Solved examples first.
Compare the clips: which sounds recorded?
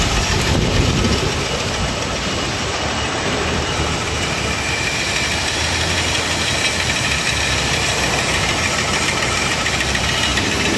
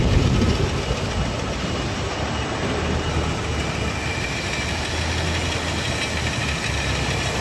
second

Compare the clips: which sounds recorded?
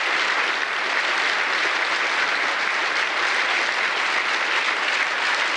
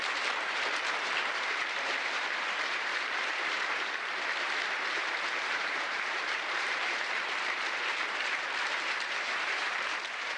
first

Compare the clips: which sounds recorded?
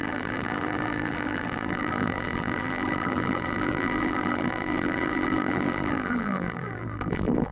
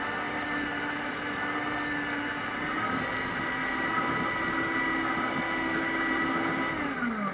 second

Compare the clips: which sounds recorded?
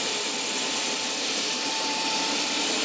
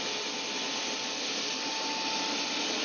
second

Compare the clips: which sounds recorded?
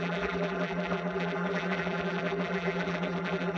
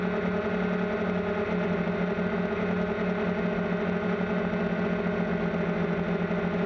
second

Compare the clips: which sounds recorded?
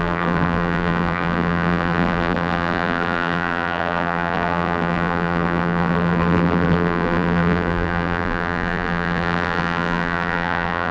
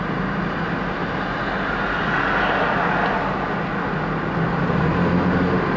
second